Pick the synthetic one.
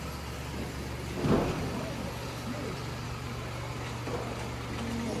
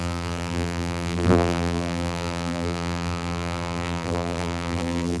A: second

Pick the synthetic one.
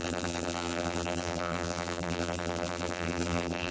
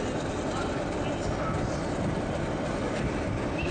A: first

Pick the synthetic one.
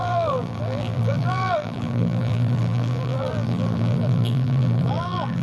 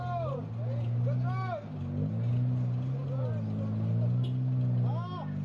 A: first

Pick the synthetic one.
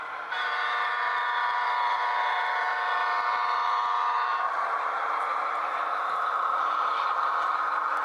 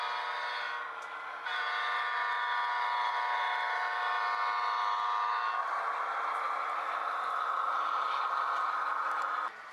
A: first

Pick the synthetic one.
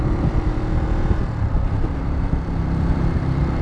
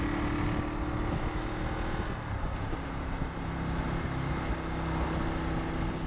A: first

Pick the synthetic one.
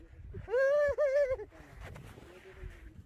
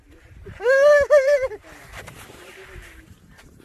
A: second